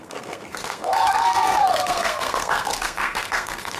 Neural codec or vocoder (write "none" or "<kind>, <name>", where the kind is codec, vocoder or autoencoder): codec, SNAC